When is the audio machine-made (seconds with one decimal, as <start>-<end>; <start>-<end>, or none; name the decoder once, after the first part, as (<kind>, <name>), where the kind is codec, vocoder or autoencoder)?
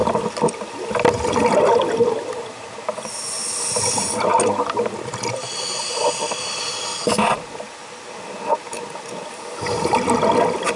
none